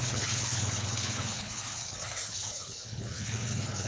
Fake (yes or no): yes